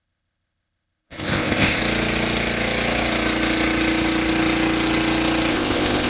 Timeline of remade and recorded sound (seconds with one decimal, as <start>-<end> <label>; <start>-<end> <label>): 0.0-1.8 remade; 1.8-5.5 recorded; 5.5-6.1 remade

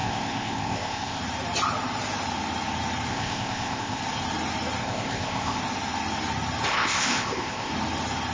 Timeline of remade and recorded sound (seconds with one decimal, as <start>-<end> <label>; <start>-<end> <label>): 0.0-1.2 remade; 1.2-3.1 recorded; 3.1-4.0 remade; 4.0-4.8 recorded; 4.8-5.6 remade; 5.6-6.7 recorded; 6.7-7.7 remade; 7.7-8.3 recorded

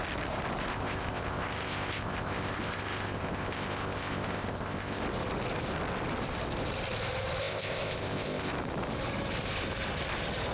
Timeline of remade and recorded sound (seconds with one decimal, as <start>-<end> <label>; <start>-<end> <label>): 0.0-0.7 recorded; 0.7-5.0 remade; 5.0-7.4 recorded; 7.4-8.5 remade; 8.5-10.5 recorded

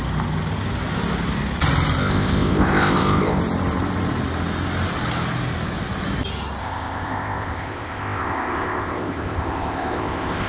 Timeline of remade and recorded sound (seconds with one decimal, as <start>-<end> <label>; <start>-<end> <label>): 0.0-2.0 recorded; 2.0-3.4 remade; 3.4-6.6 recorded; 6.6-10.5 remade

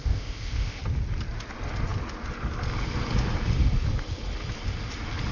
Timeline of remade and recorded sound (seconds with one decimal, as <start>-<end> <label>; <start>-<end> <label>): 0.0-0.8 remade; 0.8-5.3 recorded

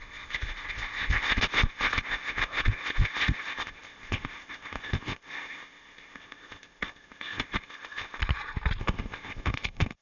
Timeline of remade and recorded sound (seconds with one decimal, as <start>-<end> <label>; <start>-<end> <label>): 0.0-8.2 remade; 8.2-8.8 recorded; 8.8-10.0 remade

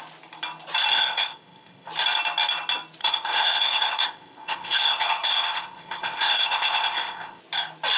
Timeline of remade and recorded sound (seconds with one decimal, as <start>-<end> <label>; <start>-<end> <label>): 0.0-0.9 recorded; 0.9-1.9 remade; 1.9-3.0 recorded; 3.0-7.4 remade; 7.4-8.0 recorded

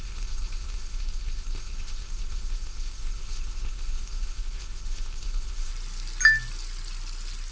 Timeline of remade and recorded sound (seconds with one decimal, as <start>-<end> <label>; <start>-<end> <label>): 0.0-5.7 remade; 5.7-7.5 recorded